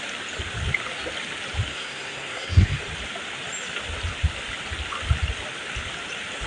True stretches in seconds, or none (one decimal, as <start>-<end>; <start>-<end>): 0.0-1.7; 2.8-6.5